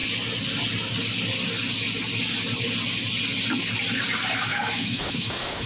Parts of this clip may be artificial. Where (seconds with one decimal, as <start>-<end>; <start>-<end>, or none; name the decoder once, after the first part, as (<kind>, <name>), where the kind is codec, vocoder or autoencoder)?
4.5-5.7 (autoencoder, DAC-VAE)